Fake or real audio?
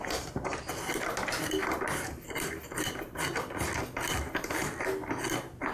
real